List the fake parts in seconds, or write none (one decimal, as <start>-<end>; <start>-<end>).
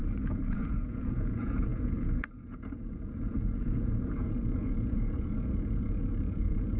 0.0-6.8